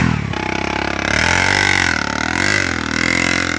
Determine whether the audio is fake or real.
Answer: real